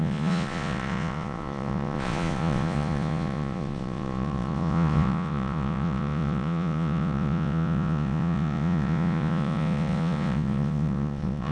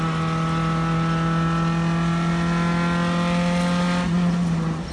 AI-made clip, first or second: first